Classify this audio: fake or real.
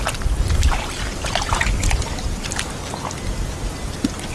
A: real